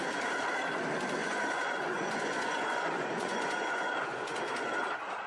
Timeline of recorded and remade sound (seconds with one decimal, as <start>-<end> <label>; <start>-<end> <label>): 0.0-1.2 recorded; 1.2-4.4 remade; 4.4-5.3 recorded